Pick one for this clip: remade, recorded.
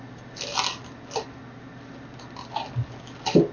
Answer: recorded